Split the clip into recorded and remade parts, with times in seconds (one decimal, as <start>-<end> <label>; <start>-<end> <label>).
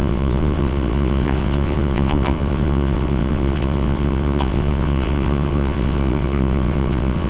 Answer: 0.0-7.3 remade